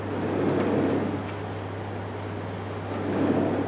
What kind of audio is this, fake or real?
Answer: real